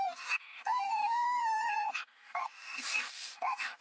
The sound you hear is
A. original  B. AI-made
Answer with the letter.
B